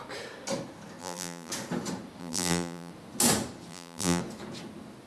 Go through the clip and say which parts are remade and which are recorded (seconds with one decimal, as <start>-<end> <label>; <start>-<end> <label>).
0.0-1.0 recorded; 1.0-1.5 remade; 1.5-2.2 recorded; 2.2-2.9 remade; 2.9-3.7 recorded; 3.7-4.2 remade; 4.2-5.1 recorded